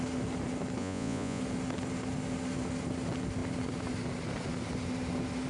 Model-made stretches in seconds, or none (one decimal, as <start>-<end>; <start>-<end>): 0.8-1.4